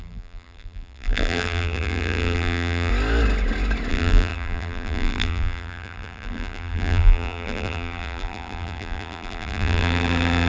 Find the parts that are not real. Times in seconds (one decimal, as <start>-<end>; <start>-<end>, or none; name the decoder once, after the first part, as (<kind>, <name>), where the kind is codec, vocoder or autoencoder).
0.0-2.9 (vocoder, BigVGAN v2); 3.9-10.5